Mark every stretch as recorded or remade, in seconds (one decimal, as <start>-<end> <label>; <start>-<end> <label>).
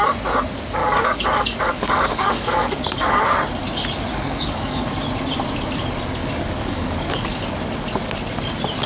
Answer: 0.0-0.8 recorded; 0.8-3.2 remade; 3.2-4.1 recorded; 4.1-4.9 remade; 4.9-6.2 recorded; 6.2-7.6 remade; 7.6-8.9 recorded